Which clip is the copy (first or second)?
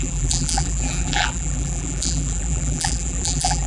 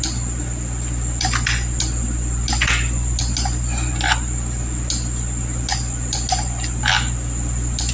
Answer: first